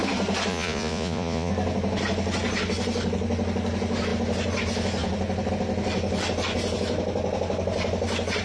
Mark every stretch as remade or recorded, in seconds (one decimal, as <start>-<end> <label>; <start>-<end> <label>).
0.0-0.5 recorded; 0.5-1.5 remade; 1.5-8.4 recorded